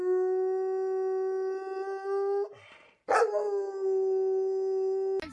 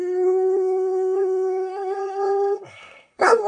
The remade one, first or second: second